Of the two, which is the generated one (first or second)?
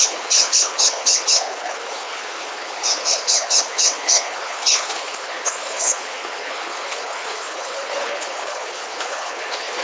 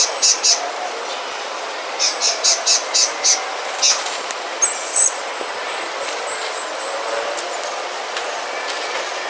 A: first